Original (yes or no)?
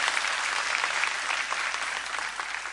yes